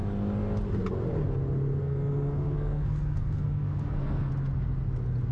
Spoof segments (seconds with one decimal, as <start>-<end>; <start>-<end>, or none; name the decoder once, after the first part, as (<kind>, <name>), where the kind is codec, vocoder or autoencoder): 1.8-4.3 (codec, SNAC)